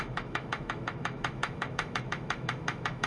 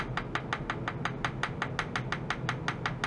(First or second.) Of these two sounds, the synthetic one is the first